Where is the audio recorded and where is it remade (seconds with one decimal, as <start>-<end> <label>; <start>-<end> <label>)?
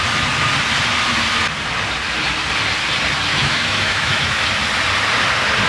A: 0.0-3.3 recorded; 3.3-4.4 remade; 4.4-5.7 recorded